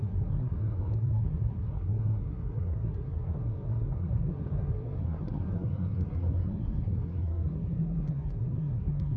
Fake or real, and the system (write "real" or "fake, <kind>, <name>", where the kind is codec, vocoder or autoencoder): fake, codec, SNAC